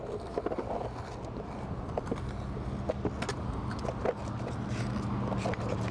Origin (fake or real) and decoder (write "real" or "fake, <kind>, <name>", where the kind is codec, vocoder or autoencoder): real